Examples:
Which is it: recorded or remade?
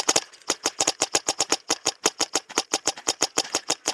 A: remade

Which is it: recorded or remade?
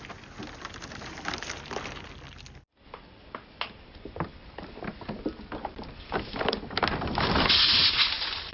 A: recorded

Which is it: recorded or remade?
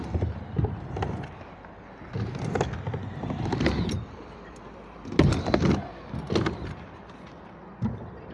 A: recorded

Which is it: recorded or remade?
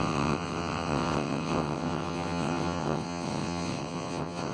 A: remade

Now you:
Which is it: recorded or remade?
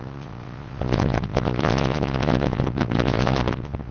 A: remade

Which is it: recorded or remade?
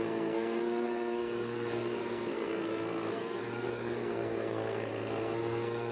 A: remade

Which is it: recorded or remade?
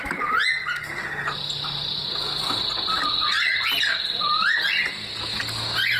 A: recorded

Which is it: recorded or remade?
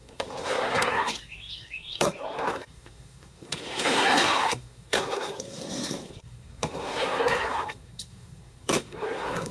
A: remade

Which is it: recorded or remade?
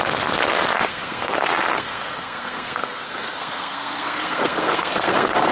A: remade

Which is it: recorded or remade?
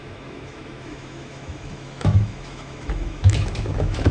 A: remade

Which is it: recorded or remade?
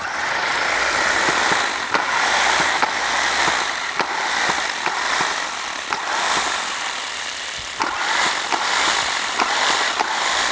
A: recorded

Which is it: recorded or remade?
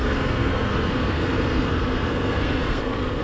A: remade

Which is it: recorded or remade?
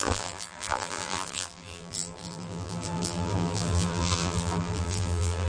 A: remade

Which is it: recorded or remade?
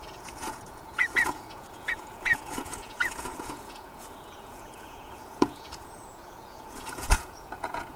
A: remade